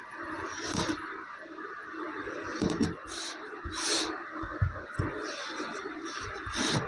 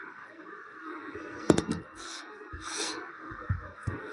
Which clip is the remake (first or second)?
second